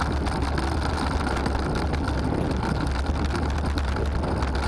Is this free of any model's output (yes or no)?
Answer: yes